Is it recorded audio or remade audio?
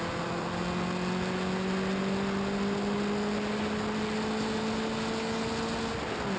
recorded